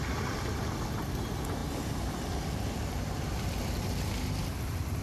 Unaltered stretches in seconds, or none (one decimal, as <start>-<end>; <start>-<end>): 0.0-5.0